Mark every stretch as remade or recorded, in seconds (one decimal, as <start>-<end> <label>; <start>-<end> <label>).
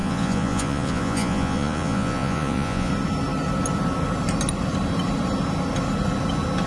0.0-2.9 remade; 2.9-6.7 recorded